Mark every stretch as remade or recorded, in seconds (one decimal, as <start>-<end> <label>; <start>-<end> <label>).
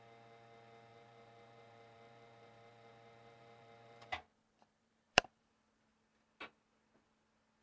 0.0-0.9 recorded; 0.9-5.5 remade; 5.5-7.6 recorded